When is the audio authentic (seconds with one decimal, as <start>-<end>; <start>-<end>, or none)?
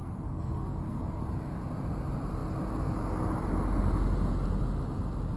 1.2-5.4